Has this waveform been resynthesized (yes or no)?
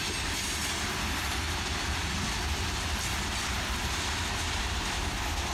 no